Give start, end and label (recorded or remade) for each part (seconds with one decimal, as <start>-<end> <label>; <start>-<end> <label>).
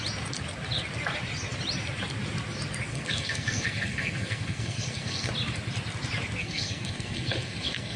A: 0.0-2.9 recorded; 2.9-5.3 remade; 5.3-6.4 recorded; 6.4-8.0 remade